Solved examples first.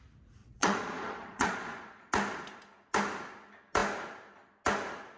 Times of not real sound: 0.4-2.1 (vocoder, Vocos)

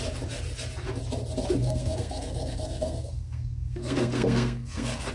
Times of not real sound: 1.6-5.1 (codec, SNAC)

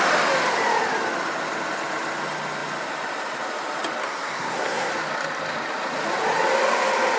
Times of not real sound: 4.0-4.9 (codec, SNAC)

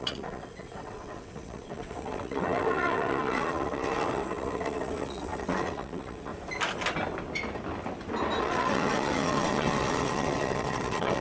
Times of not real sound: 0.0-6.3 (vocoder, WaveNeXt); 8.4-11.2